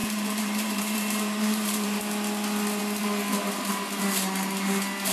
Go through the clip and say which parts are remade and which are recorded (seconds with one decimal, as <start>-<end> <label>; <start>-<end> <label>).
0.0-2.0 remade; 2.0-5.1 recorded